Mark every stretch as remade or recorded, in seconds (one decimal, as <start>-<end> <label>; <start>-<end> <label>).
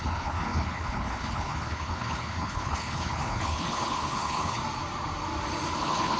0.0-4.6 remade; 4.6-5.8 recorded; 5.8-6.2 remade